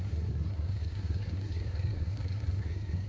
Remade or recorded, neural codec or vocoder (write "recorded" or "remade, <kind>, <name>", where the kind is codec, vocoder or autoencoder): remade, codec, SNAC